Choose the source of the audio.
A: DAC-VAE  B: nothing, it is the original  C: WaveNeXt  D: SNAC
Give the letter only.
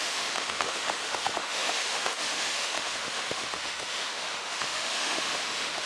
A